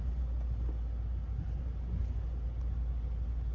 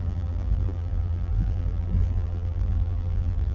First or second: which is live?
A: first